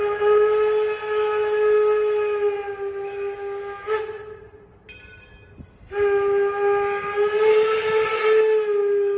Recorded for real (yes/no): yes